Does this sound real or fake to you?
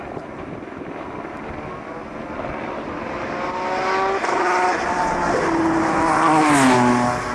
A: real